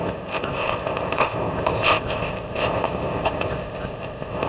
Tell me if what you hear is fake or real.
fake